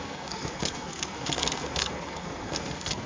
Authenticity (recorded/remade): remade